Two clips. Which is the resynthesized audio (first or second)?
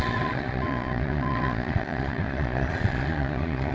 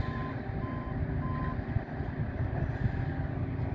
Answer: first